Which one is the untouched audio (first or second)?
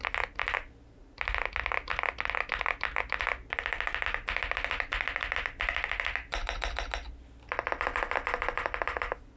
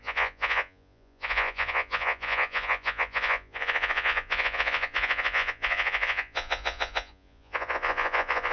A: first